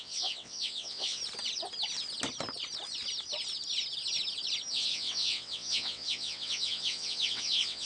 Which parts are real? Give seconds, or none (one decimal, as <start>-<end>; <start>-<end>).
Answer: 1.2-4.7